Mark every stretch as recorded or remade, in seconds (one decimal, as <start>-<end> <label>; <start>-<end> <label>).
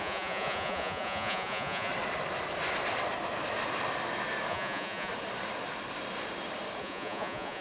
0.0-1.9 remade; 1.9-4.5 recorded; 4.5-5.1 remade; 5.1-6.8 recorded; 6.8-7.6 remade